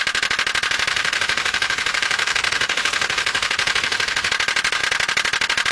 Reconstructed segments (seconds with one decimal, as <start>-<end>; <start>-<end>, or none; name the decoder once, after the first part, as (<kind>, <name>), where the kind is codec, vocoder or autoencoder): 0.9-4.3 (autoencoder, DAC-VAE)